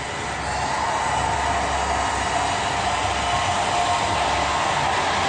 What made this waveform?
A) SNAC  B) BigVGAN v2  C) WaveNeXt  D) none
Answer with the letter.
D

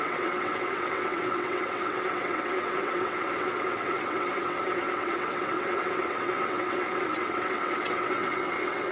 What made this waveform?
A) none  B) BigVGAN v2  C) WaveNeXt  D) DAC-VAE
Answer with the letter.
C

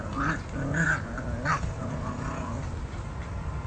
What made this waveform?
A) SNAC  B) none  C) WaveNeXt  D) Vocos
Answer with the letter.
B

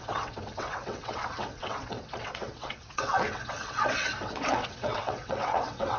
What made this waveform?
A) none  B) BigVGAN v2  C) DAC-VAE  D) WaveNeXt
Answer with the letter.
D